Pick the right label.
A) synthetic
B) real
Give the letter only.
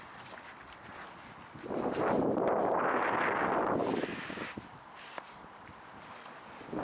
B